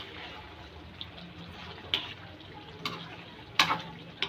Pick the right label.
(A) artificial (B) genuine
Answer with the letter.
B